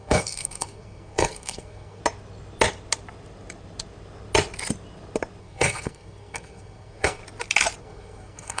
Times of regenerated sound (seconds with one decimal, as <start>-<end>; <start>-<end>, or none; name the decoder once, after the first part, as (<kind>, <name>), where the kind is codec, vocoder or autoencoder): 0.0-2.0 (codec, SNAC); 5.4-7.2; 7.8-8.6

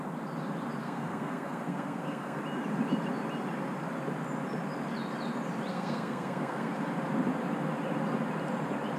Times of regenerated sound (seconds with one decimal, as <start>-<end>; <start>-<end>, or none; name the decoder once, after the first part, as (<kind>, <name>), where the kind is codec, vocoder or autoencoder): 0.8-2.4 (codec, SNAC); 5.7-6.7

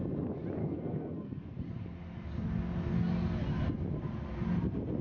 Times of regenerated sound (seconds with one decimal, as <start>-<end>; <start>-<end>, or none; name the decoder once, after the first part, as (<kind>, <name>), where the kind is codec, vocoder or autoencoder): 0.6-1.6 (codec, SNAC)